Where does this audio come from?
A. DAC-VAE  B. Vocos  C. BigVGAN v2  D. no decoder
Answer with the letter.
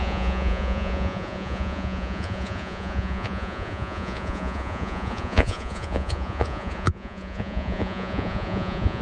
B